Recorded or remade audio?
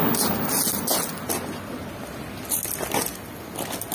recorded